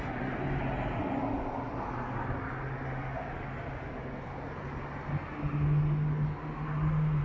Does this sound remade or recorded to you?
recorded